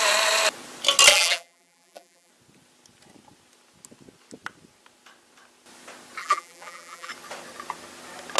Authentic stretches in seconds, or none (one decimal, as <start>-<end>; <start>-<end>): 0.0-1.1; 2.3-6.2; 7.1-8.4